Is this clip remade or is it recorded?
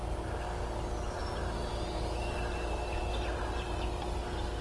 recorded